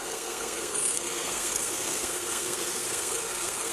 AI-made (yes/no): yes